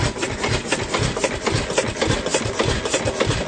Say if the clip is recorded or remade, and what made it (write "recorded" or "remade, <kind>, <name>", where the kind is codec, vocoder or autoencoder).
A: recorded